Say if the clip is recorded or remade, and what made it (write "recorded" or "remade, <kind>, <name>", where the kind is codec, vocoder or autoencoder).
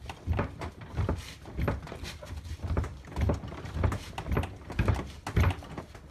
recorded